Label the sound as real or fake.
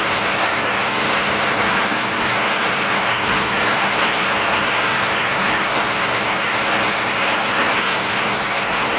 fake